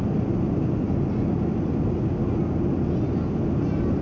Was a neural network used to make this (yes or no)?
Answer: no